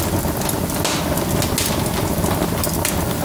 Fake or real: real